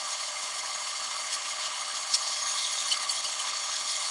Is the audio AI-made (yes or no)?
yes